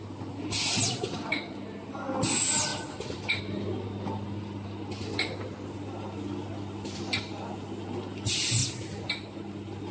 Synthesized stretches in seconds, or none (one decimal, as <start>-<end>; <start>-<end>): none